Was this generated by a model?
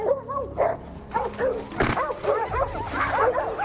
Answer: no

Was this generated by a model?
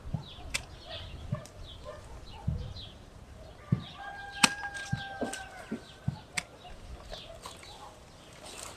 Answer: no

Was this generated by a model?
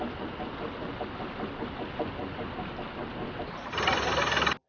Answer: no